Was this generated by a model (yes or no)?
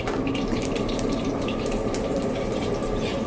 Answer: yes